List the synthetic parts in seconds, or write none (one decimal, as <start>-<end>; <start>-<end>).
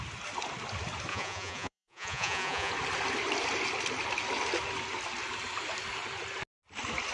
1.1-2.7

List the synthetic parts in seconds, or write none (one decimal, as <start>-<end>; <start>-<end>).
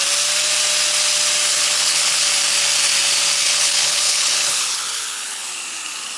1.5-2.2; 3.4-5.5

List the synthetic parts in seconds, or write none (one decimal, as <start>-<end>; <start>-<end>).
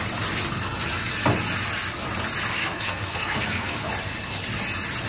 2.6-3.9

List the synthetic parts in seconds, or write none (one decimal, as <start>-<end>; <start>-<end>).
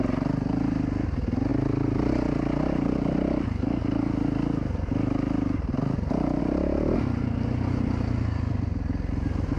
none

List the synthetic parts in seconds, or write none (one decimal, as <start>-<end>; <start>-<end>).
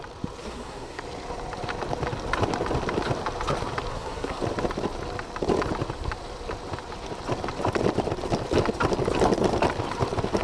0.4-1.0; 3.9-4.4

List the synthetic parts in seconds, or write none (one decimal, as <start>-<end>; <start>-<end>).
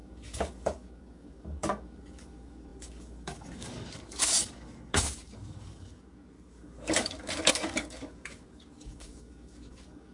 0.0-10.1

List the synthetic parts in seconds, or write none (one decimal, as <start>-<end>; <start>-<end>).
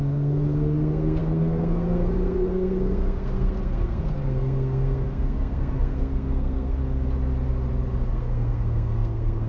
0.0-6.8; 8.1-9.5